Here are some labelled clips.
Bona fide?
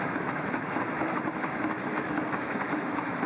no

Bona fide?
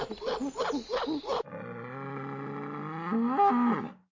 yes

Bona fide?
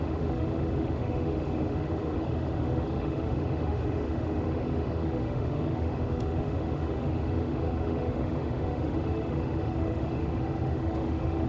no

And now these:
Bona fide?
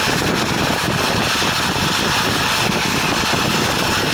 yes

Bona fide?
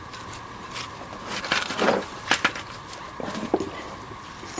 yes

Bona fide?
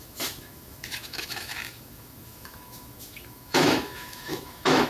no